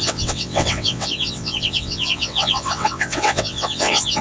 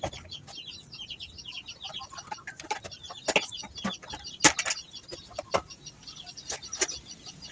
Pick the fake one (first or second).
first